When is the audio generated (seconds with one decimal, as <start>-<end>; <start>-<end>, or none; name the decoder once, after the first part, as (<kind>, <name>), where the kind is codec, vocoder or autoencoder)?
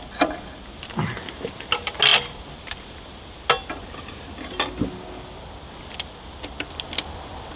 none